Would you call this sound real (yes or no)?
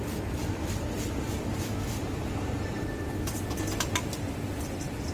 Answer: yes